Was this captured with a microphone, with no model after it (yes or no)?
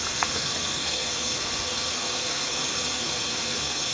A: no